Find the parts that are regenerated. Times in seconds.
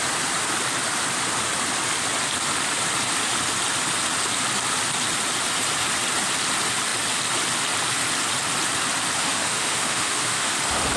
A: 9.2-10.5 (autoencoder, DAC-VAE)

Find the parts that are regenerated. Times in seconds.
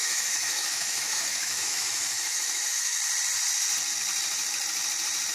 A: 0.0-3.0 (autoencoder, DAC-VAE)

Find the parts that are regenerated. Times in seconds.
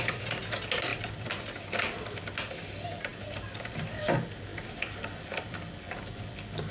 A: none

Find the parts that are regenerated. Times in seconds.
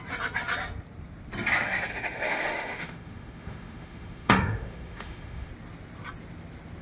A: 1.9-5.5 (autoencoder, DAC-VAE)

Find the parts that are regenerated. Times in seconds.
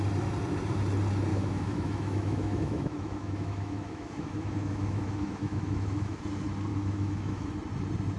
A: 1.3-6.2 (autoencoder, DAC-VAE); 6.7-7.5